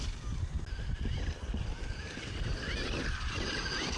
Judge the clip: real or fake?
real